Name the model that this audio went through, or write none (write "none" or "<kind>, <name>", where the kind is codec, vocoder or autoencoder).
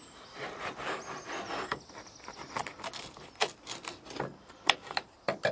none